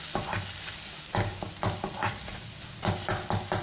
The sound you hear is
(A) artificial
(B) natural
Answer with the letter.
B